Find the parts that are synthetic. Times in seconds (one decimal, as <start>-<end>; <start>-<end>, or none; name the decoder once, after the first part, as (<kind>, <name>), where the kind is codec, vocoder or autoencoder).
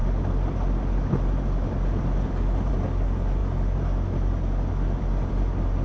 none